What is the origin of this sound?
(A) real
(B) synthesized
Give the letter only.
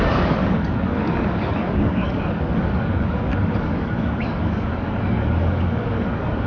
B